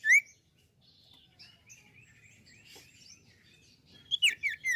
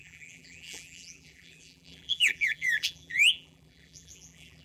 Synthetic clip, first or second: second